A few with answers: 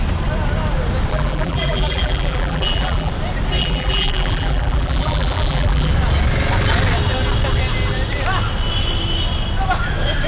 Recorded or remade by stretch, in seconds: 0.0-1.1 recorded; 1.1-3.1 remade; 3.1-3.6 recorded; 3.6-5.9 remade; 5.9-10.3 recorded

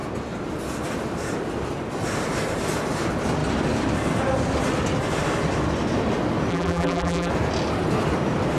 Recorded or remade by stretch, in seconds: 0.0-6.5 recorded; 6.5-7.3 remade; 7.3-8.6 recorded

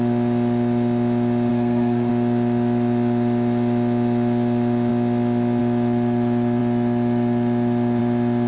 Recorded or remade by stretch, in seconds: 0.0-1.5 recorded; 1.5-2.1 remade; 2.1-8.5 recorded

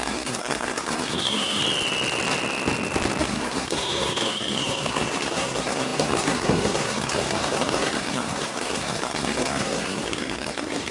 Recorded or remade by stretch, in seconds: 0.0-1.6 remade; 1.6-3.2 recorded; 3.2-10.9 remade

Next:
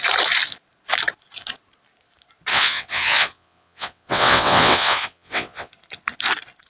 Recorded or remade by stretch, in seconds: 0.0-2.5 recorded; 2.5-5.7 remade; 5.7-6.7 recorded

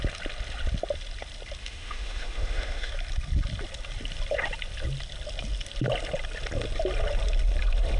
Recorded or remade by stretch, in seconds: 0.0-1.6 recorded; 1.6-2.9 remade; 2.9-8.0 recorded

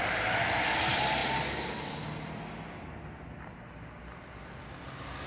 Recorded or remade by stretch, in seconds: 0.0-5.3 recorded